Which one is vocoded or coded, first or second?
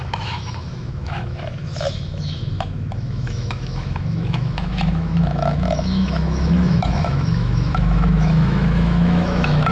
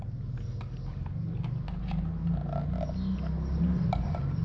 first